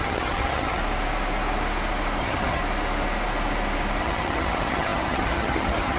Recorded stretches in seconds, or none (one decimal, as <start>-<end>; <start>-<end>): 0.8-2.2; 2.6-4.0